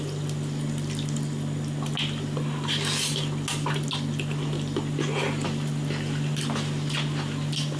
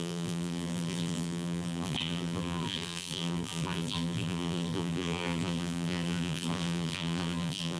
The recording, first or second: first